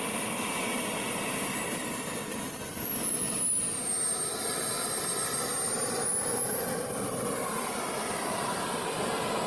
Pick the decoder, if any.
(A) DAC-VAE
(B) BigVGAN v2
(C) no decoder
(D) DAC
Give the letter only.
B